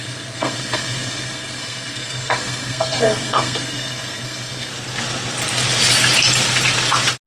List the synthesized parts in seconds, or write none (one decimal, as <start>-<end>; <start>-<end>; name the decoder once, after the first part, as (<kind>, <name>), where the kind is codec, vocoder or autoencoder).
0.0-4.7 (codec, SNAC)